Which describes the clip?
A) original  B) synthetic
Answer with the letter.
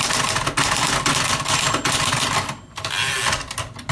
A